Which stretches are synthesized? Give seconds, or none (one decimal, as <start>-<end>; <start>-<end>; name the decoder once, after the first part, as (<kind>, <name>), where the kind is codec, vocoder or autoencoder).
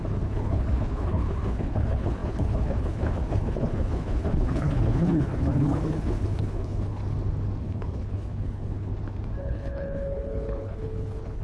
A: 0.0-7.0 (codec, HILCodec); 7.6-8.9; 9.4-11.4